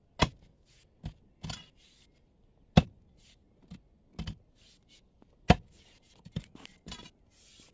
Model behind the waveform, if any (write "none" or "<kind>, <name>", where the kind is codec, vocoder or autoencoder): none